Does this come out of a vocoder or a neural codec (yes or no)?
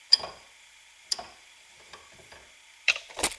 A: yes